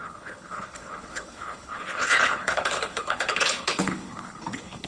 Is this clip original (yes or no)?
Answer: no